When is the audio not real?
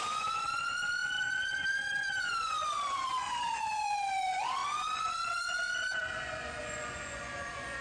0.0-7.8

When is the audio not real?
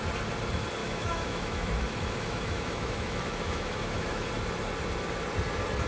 0.8-4.3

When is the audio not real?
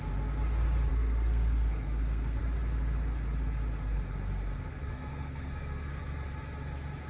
0.9-2.4; 4.9-6.0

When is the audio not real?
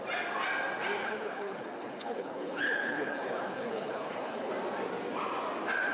1.0-4.5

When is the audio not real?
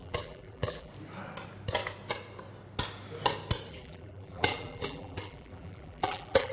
0.0-0.9; 3.7-6.5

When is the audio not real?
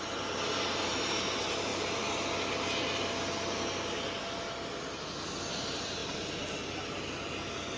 none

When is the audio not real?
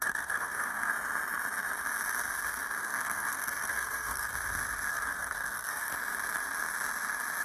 0.0-0.9; 2.8-4.3; 4.9-5.9